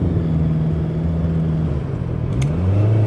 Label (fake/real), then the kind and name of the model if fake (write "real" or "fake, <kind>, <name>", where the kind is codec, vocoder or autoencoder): real